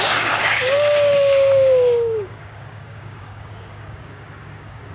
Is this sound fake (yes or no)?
yes